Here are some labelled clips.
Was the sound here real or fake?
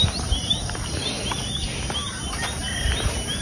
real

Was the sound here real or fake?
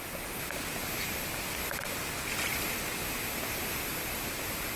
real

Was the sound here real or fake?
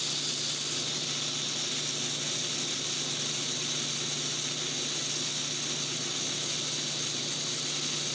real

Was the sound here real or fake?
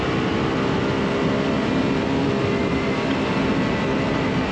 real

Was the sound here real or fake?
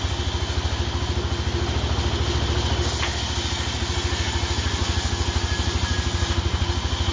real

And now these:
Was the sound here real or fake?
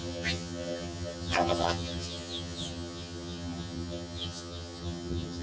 fake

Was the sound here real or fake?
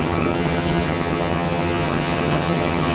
fake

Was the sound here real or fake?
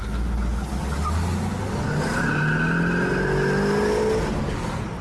real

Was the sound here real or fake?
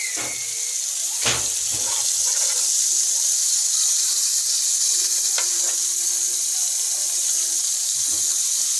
real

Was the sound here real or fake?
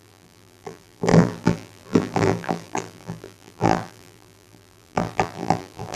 fake